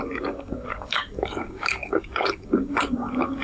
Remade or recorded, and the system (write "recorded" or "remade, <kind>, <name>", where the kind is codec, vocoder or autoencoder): remade, codec, DAC